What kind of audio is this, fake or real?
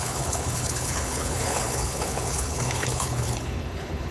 fake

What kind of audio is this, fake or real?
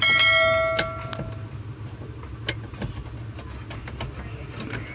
real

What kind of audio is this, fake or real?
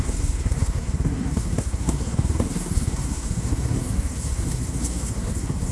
fake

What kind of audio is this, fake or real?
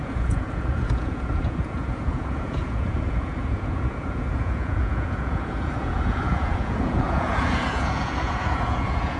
fake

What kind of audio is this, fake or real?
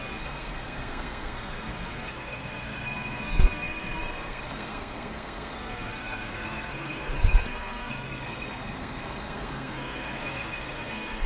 fake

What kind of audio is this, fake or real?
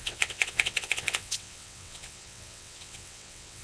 fake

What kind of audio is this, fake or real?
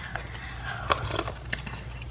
real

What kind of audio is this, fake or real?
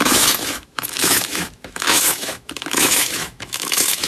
fake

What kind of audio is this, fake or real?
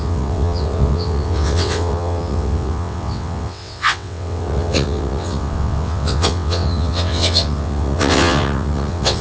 fake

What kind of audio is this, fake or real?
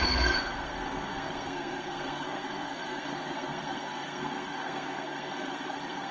fake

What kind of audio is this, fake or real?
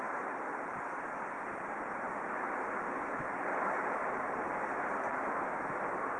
real